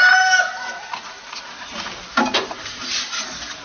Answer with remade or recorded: recorded